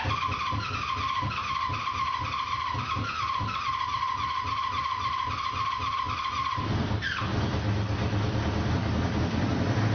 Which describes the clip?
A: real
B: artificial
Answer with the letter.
A